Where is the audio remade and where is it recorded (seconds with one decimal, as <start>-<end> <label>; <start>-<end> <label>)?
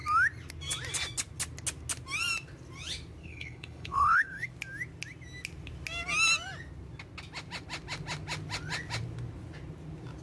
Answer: 0.0-3.2 recorded; 3.2-4.5 remade; 4.5-10.2 recorded